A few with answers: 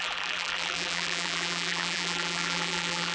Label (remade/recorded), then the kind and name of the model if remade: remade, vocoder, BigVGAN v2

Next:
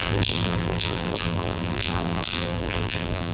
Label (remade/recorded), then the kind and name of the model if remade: remade, vocoder, BigVGAN v2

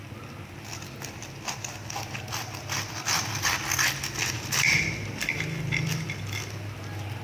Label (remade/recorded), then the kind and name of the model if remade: recorded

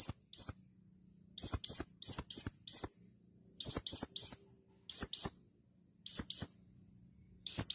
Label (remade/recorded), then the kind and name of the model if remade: recorded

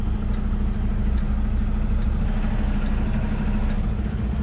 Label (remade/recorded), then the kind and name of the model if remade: recorded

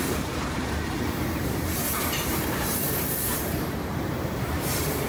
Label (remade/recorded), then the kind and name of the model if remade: remade, vocoder, BigVGAN v2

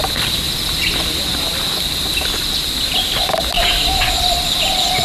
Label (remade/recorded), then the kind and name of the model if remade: remade, vocoder, BigVGAN v2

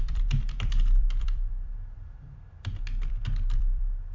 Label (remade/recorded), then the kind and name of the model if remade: remade, vocoder, BigVGAN v2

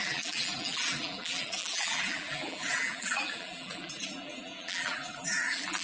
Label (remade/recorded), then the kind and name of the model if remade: remade, vocoder, BigVGAN v2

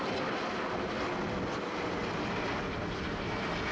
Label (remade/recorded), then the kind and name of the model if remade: recorded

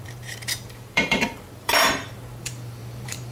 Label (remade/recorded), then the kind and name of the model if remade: remade, vocoder, BigVGAN v2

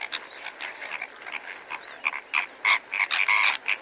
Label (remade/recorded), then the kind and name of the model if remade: remade, vocoder, BigVGAN v2